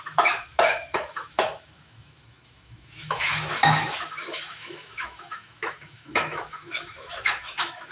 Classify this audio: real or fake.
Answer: fake